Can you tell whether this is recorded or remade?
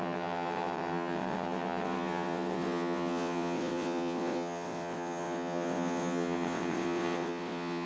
remade